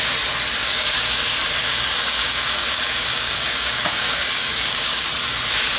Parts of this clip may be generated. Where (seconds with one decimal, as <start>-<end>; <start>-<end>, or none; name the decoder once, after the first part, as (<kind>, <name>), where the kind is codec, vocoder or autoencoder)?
0.6-1.2 (codec, DAC); 1.6-5.1